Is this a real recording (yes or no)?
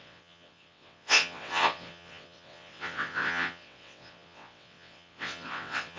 no